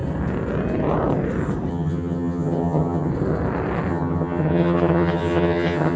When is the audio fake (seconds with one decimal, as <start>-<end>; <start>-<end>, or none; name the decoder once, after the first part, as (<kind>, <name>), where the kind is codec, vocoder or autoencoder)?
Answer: 1.7-3.1 (vocoder, HiFi-GAN); 3.9-6.0